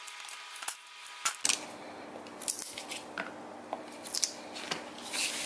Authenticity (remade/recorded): recorded